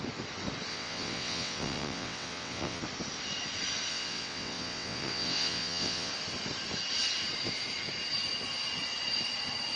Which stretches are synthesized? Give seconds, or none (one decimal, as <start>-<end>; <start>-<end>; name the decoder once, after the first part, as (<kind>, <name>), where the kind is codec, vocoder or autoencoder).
0.7-2.8 (vocoder, WaveNeXt); 3.9-6.1